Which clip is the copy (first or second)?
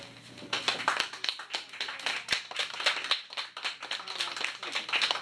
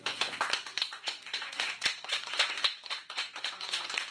second